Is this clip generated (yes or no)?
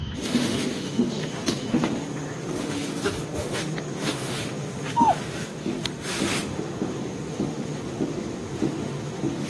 yes